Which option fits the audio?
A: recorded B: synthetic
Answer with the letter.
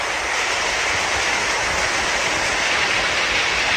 A